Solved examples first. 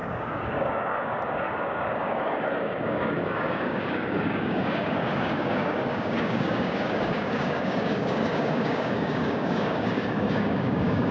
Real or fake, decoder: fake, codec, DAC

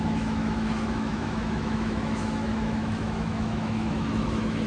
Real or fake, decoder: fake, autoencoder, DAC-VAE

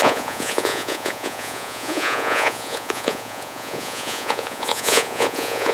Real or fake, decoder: fake, vocoder, Vocos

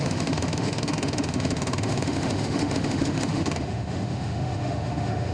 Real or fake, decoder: fake, autoencoder, DAC-VAE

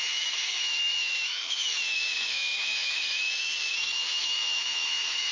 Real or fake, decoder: fake, autoencoder, DAC-VAE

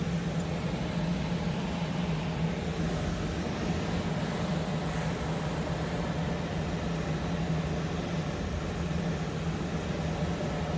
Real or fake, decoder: real